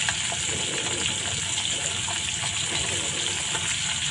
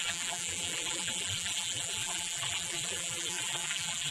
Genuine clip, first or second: first